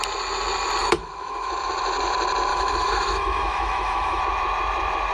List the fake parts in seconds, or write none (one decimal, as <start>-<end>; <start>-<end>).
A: 0.8-1.5; 2.5-4.2